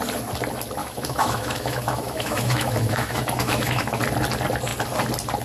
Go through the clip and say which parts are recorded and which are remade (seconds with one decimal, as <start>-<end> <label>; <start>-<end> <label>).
0.0-0.8 recorded; 0.8-4.0 remade; 4.0-5.4 recorded